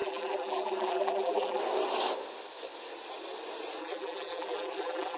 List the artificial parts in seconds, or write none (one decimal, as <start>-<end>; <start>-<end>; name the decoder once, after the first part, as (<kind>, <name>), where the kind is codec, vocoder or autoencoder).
0.0-1.6 (vocoder, BigVGAN v2); 3.8-5.2